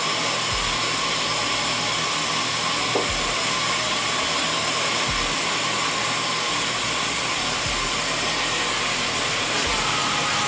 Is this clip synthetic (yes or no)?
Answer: no